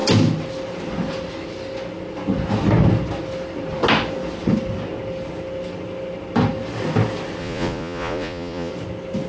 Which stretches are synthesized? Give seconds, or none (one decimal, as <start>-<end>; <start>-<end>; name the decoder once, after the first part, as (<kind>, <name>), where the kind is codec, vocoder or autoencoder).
7.4-8.7 (vocoder, Vocos)